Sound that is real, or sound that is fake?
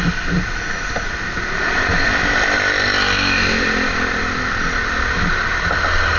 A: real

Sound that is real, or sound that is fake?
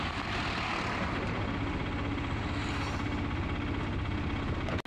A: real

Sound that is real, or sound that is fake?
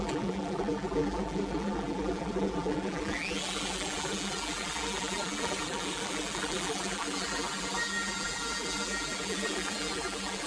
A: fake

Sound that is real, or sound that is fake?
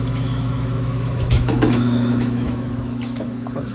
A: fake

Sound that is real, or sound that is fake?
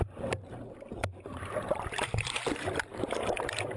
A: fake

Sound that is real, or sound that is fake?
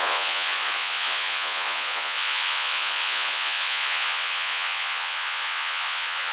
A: fake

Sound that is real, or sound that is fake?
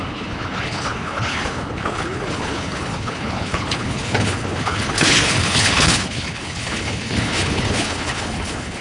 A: fake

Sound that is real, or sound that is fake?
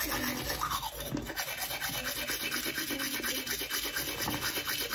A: real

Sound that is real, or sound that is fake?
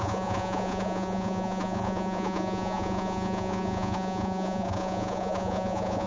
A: fake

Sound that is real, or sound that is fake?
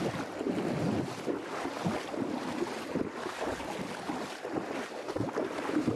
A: real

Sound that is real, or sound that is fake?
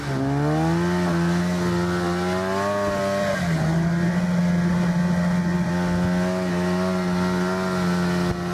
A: real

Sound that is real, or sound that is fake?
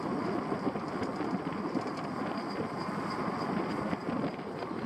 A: real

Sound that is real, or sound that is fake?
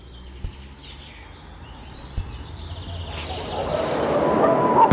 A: real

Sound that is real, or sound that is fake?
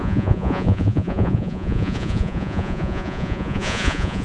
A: fake